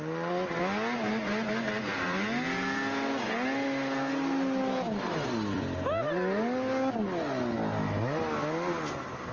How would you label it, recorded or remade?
recorded